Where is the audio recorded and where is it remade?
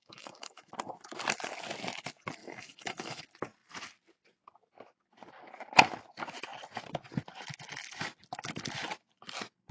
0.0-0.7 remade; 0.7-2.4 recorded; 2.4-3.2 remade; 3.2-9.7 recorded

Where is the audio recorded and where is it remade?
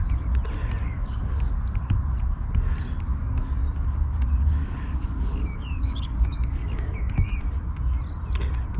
0.0-0.8 recorded; 0.8-1.8 remade; 1.8-3.1 recorded; 3.1-7.4 remade; 7.4-8.8 recorded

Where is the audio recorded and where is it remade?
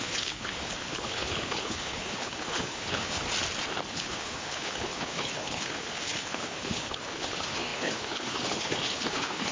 0.0-3.2 remade; 3.2-3.9 recorded; 3.9-9.5 remade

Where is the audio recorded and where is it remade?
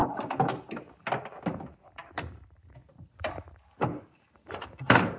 0.0-1.8 recorded; 1.8-5.2 remade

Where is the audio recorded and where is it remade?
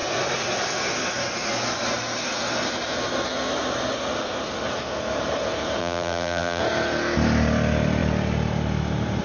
0.0-5.8 recorded; 5.8-6.6 remade; 6.6-9.2 recorded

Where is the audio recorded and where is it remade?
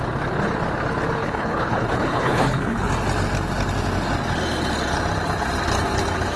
0.0-1.2 recorded; 1.2-2.9 remade; 2.9-6.4 recorded